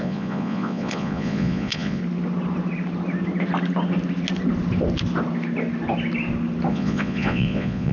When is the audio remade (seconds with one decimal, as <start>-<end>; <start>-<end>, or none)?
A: 0.0-2.0; 6.7-7.9